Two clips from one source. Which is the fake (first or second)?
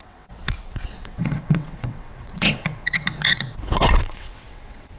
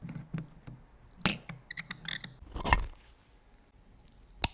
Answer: first